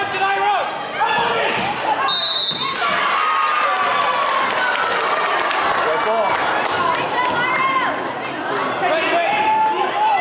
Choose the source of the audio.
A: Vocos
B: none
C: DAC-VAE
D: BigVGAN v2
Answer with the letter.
B